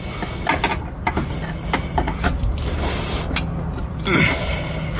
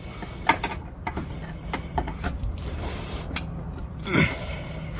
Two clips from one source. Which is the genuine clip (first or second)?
first